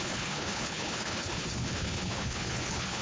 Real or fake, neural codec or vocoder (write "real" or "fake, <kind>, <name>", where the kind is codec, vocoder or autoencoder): fake, codec, HILCodec